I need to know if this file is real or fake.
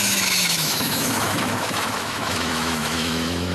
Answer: fake